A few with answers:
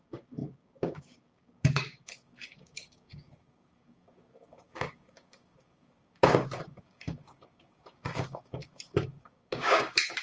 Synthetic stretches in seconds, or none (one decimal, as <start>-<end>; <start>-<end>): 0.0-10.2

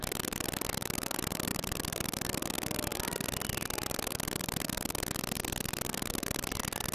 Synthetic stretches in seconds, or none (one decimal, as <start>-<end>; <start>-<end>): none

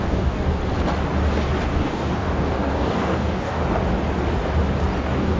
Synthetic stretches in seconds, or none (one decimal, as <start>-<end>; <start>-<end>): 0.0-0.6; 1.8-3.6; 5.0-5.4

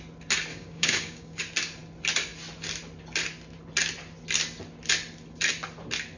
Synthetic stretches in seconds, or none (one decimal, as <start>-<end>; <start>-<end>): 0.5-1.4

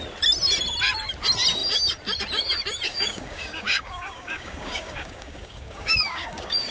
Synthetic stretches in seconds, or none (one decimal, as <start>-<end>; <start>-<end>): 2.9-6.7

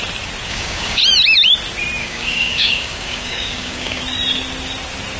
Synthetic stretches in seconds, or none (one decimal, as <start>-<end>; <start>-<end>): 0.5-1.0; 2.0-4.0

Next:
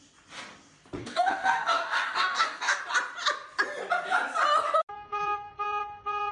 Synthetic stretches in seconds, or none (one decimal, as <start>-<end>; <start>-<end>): 1.0-2.8